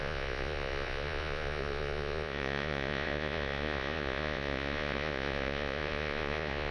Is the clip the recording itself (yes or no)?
no